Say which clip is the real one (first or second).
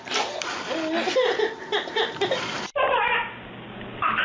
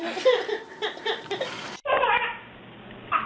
first